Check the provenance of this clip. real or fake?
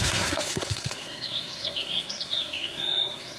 fake